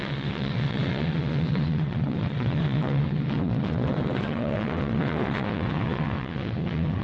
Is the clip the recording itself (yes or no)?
no